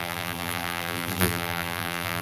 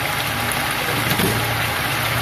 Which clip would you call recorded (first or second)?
second